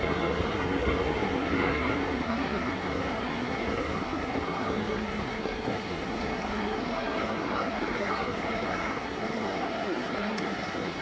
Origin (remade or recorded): remade